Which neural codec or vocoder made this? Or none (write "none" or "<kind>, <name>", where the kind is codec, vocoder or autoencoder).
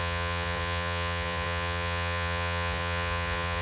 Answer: vocoder, Vocos